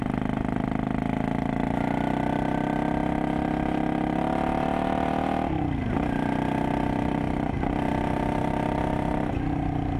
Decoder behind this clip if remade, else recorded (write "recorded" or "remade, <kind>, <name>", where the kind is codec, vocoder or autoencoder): recorded